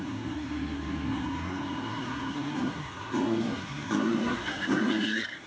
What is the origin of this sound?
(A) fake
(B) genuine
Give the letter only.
A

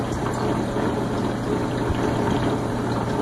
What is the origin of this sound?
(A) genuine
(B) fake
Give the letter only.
B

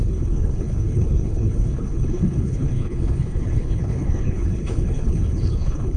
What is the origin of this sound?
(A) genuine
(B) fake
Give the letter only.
B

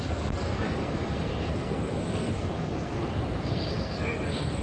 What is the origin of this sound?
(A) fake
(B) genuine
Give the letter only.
A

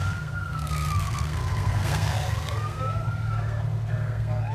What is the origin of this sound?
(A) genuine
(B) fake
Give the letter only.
B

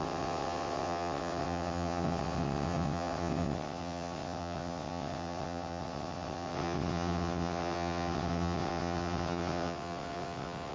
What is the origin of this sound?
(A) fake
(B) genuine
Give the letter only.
A